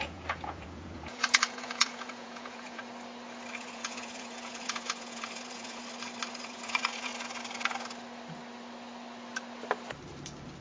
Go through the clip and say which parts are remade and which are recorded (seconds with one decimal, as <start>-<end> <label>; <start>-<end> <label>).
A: 0.0-2.8 remade; 2.8-3.6 recorded; 3.6-5.8 remade; 5.8-6.4 recorded; 6.4-7.1 remade; 7.1-10.6 recorded